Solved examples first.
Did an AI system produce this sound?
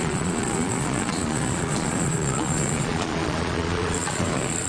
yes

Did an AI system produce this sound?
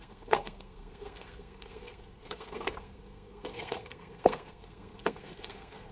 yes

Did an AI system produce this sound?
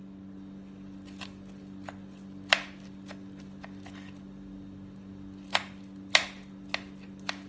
no